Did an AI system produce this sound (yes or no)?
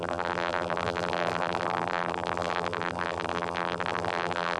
yes